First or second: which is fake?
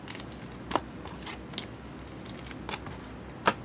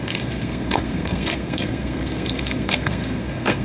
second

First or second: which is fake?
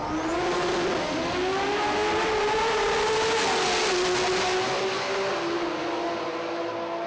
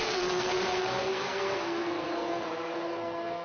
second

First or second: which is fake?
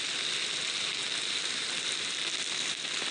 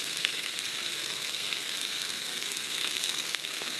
second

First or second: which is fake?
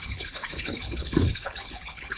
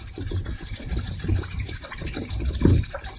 first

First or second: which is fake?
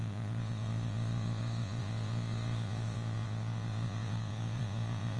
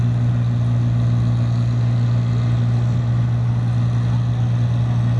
first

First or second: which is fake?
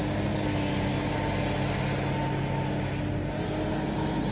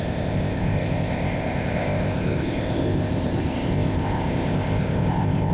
second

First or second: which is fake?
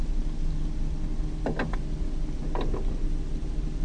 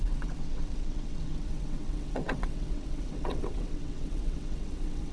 second